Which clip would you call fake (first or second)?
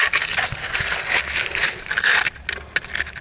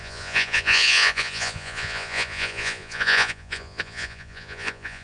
second